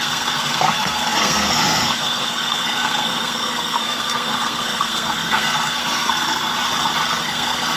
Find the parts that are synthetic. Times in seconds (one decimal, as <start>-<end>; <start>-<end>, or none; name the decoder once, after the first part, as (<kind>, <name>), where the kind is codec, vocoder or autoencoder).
0.0-6.5 (codec, SNAC); 7.2-7.8